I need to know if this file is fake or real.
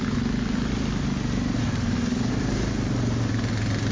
real